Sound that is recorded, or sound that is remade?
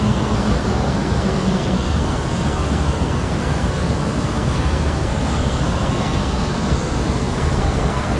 remade